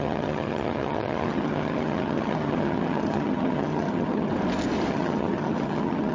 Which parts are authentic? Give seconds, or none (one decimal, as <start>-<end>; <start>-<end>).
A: 4.3-4.9